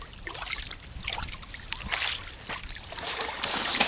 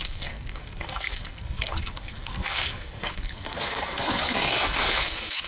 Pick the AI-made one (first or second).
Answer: second